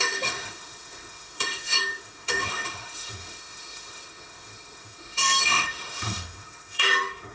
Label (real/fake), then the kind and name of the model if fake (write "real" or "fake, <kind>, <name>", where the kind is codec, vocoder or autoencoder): fake, autoencoder, DAC-VAE